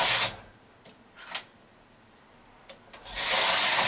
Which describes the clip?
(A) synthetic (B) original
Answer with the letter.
B